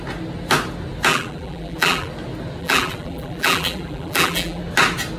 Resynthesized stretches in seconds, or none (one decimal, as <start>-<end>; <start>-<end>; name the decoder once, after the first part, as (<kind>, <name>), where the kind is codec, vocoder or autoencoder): 1.1-2.1 (vocoder, BigVGAN v2); 2.6-4.6